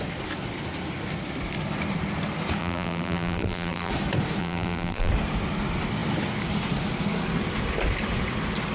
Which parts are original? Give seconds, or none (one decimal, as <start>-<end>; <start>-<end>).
0.0-2.6; 3.9-4.4; 5.1-8.7